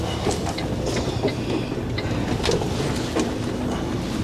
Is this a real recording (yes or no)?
yes